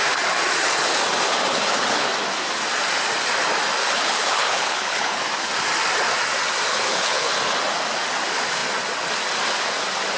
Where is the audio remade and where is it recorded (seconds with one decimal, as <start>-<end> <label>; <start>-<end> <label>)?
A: 0.0-1.5 recorded; 1.5-2.1 remade; 2.1-3.8 recorded; 3.8-5.2 remade; 5.2-6.7 recorded; 6.7-7.3 remade; 7.3-10.2 recorded